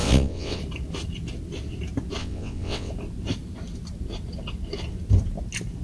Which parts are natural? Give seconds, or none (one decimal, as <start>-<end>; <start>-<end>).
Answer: 0.6-2.2; 2.9-5.8